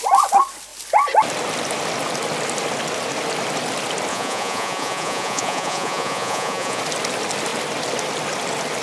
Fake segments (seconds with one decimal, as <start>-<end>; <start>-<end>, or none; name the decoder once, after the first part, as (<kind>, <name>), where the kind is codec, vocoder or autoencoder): 4.1-6.8 (vocoder, Vocos)